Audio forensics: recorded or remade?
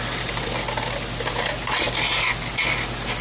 recorded